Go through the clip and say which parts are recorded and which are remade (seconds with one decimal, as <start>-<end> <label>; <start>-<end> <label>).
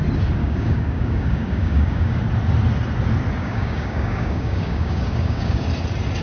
0.0-0.4 recorded; 0.4-2.2 remade; 2.2-3.4 recorded; 3.4-5.7 remade; 5.7-6.2 recorded